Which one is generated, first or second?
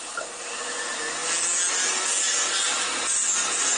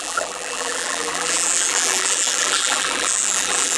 second